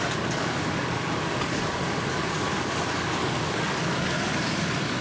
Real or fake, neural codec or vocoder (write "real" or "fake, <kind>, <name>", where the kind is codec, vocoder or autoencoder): fake, codec, DAC